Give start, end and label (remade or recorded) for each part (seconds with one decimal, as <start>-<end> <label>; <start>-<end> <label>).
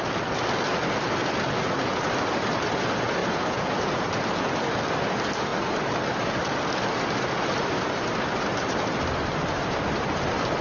0.0-3.2 recorded; 3.2-4.1 remade; 4.1-10.6 recorded